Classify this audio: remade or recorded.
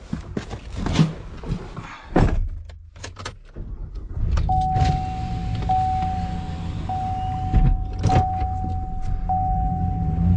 recorded